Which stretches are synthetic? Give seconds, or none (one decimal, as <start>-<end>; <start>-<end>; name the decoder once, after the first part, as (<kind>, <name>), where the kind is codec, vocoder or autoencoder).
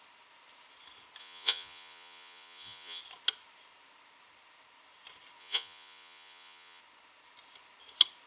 1.2-3.0 (vocoder, Vocos); 5.4-6.8